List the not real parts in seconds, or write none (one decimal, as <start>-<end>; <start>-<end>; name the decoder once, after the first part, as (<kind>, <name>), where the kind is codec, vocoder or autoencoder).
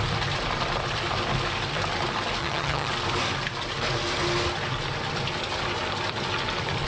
2.4-2.9 (vocoder, HiFi-GAN)